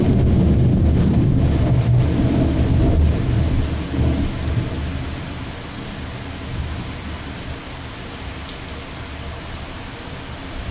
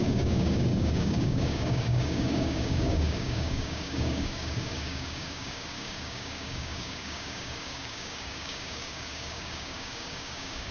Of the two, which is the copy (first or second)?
second